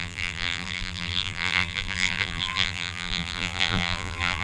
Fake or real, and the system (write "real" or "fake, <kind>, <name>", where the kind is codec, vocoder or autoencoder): fake, vocoder, BigVGAN v2